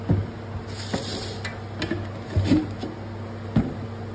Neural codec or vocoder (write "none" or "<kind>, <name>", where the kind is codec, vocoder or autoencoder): none